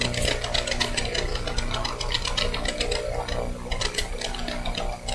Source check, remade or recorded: recorded